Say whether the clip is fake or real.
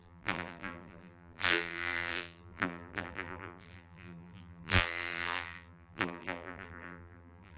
fake